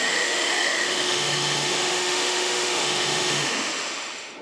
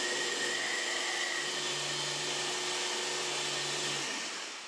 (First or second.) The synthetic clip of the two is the first